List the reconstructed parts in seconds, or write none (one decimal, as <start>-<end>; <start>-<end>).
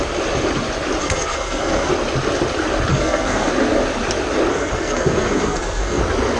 1.0-1.9; 2.9-3.5; 4.5-6.0